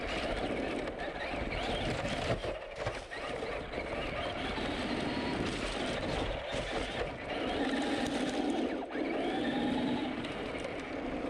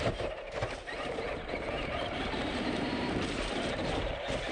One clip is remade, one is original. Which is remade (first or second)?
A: second